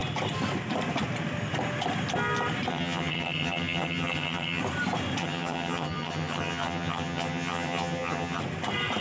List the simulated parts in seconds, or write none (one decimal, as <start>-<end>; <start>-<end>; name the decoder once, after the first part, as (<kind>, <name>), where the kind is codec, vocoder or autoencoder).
2.7-4.6 (vocoder, HiFi-GAN); 5.2-8.4